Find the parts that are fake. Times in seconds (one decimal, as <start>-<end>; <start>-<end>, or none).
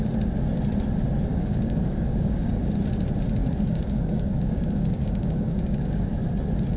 1.3-2.8; 3.4-6.0